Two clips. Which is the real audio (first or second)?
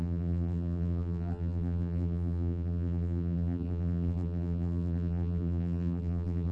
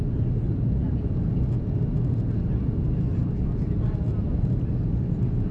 second